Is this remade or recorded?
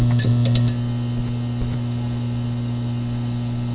recorded